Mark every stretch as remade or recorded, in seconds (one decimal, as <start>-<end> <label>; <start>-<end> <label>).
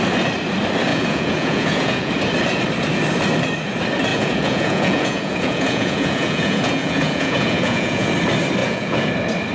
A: 0.0-0.9 recorded; 0.9-2.1 remade; 2.1-4.1 recorded; 4.1-8.1 remade; 8.1-8.6 recorded; 8.6-9.1 remade; 9.1-9.5 recorded